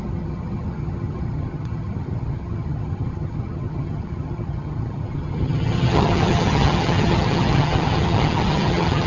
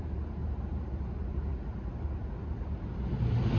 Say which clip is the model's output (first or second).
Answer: first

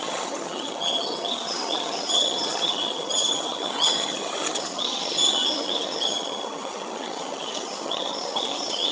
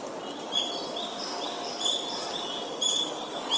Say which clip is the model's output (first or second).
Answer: first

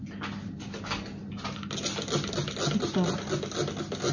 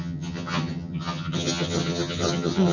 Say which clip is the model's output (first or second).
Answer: second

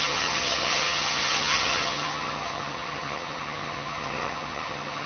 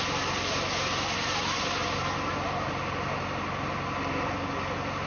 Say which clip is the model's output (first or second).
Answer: first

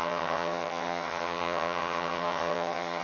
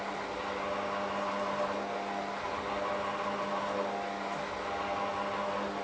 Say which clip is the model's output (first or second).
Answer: first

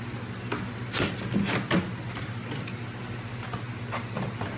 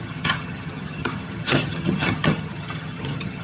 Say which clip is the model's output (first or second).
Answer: second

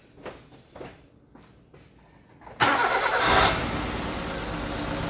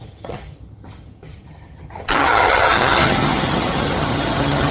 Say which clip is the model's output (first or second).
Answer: second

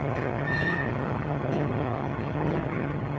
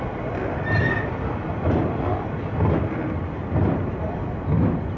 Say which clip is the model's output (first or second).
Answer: first